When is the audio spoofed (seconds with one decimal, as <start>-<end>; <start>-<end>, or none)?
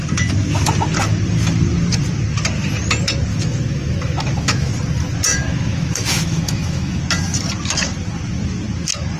3.3-4.7; 5.3-7.0